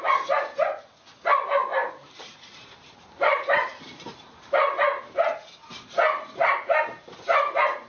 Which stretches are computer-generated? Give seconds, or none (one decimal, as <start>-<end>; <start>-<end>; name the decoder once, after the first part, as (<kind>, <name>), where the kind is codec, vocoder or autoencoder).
1.7-5.1 (vocoder, BigVGAN v2)